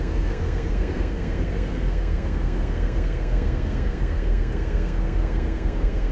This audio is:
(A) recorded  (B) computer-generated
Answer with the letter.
B